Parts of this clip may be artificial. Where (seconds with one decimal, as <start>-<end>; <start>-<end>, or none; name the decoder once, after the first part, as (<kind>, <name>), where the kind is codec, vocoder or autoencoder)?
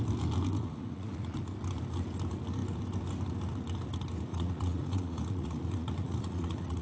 0.6-1.5 (vocoder, Vocos); 4.3-6.8